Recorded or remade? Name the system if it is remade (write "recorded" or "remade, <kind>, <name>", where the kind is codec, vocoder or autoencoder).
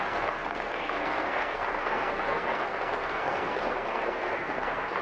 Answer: remade, codec, SNAC